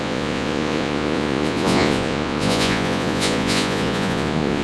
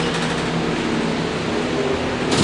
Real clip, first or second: second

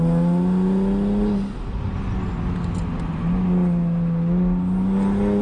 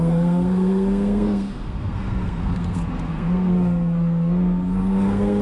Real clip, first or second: first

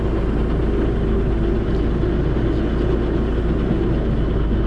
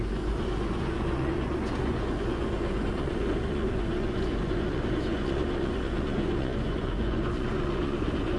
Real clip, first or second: first